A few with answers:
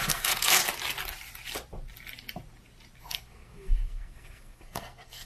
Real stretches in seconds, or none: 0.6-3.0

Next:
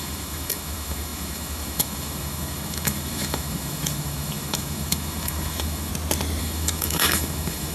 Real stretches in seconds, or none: 5.9-6.4

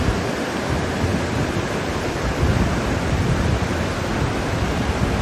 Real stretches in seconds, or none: 0.0-1.1; 4.2-5.2

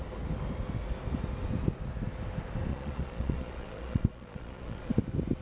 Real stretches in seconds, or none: 0.0-2.7; 4.9-5.4

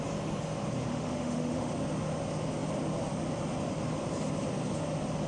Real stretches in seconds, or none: 0.0-0.9; 1.7-5.3

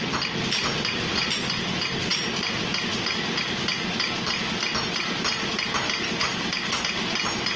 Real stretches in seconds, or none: 0.0-7.6